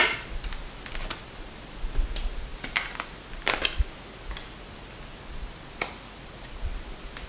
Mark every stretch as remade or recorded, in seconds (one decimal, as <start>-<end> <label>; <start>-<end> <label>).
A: 0.0-7.3 recorded